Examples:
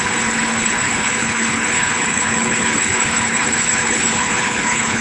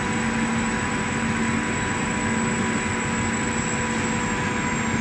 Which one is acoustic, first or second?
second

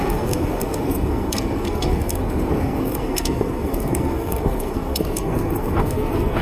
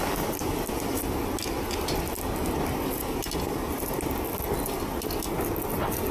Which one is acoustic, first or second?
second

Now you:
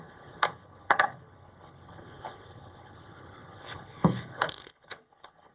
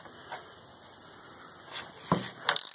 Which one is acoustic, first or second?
second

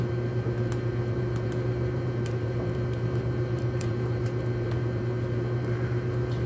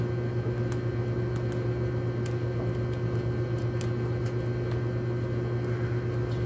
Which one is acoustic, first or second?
second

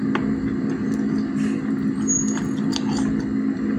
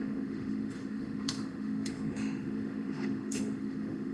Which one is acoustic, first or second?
first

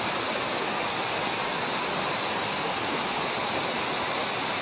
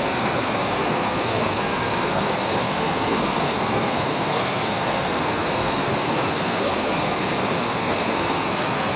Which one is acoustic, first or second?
first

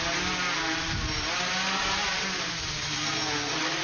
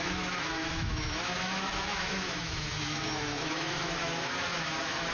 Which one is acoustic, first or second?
first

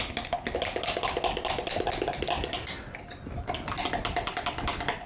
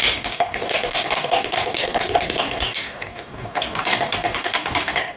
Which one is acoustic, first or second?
first